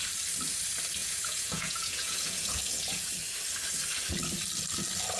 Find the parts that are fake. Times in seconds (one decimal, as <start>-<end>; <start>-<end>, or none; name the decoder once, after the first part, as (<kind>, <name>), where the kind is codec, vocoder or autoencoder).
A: 1.0-3.1 (vocoder, Vocos)